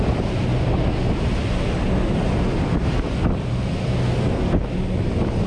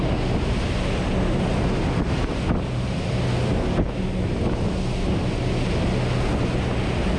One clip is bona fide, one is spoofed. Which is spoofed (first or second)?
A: first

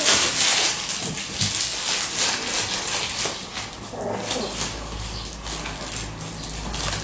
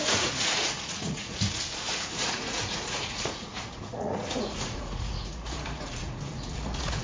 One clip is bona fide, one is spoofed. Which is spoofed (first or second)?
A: second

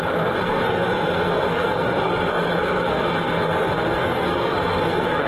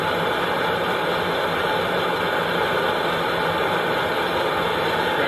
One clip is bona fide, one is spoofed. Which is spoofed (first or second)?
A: first